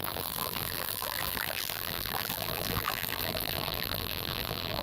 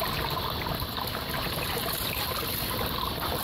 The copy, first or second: first